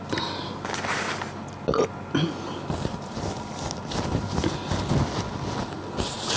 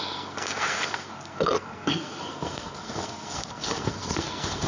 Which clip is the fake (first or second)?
second